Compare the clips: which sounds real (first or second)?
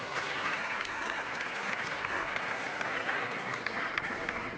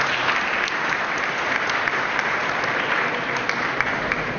second